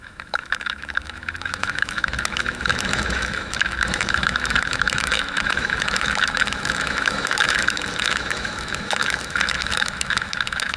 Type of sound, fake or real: fake